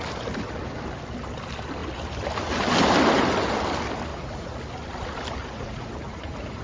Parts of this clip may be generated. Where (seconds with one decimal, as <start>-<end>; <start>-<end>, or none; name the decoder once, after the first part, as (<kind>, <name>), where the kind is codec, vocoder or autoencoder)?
4.1-4.6 (vocoder, Vocos); 5.4-6.6